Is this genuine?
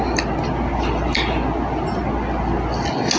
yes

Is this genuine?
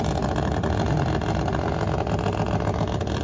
yes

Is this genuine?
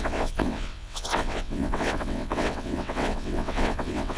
no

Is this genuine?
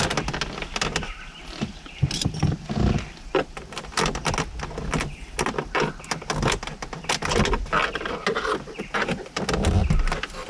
yes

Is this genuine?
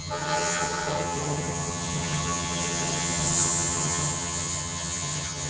no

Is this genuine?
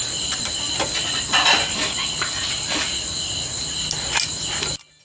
yes